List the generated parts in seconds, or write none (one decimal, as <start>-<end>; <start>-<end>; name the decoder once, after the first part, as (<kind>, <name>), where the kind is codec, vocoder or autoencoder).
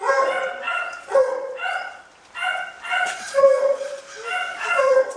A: 0.4-2.0 (vocoder, Vocos); 2.9-4.0; 4.5-5.2